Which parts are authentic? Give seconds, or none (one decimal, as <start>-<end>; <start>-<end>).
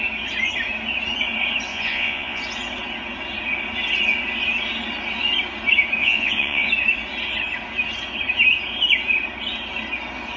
0.0-1.7; 2.4-6.0; 6.7-10.4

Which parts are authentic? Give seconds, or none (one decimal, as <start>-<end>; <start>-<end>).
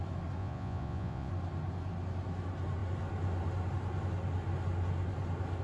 0.0-0.4; 1.3-5.6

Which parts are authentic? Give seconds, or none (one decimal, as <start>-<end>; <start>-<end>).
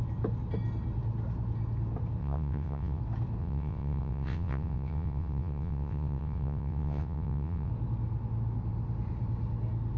0.0-2.2; 3.0-3.4; 7.7-10.0